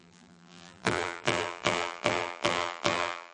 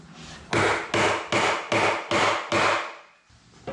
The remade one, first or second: first